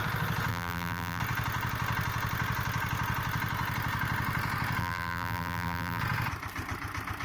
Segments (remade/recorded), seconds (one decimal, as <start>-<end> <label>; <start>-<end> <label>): 0.0-0.5 recorded; 0.5-1.2 remade; 1.2-4.8 recorded; 4.8-6.0 remade; 6.0-7.2 recorded